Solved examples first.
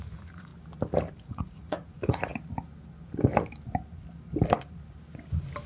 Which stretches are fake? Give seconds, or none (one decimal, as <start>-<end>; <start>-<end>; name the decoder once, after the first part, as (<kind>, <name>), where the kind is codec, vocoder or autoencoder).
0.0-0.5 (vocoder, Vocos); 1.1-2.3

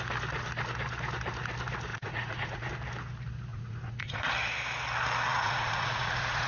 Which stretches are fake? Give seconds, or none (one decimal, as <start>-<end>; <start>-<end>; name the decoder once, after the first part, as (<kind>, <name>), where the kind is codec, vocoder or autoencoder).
1.9-2.7 (vocoder, Vocos); 3.5-4.3; 5.3-6.5

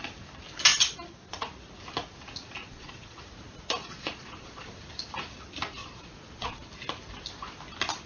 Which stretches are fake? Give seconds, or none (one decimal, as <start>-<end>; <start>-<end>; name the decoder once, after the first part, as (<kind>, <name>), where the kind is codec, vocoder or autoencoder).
2.6-3.2 (vocoder, Vocos); 3.8-4.7; 5.8-6.7

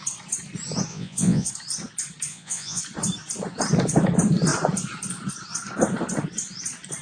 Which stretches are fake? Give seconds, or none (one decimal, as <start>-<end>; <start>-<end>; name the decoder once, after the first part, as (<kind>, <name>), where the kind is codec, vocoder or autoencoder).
0.9-1.5 (vocoder, Vocos); 2.3-2.8

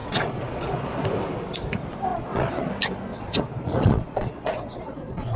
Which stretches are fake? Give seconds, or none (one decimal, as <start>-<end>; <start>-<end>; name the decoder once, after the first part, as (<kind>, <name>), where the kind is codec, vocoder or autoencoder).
0.0-1.0 (vocoder, Vocos); 2.1-2.7; 3.1-5.4

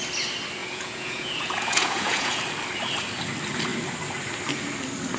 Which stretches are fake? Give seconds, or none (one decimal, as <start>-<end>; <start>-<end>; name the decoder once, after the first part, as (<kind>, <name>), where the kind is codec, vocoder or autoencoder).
0.6-2.4 (vocoder, Vocos)